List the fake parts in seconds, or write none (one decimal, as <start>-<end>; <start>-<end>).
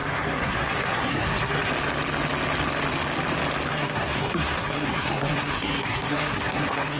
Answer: 0.0-1.7; 3.7-7.0